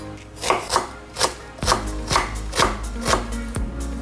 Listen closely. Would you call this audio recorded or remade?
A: recorded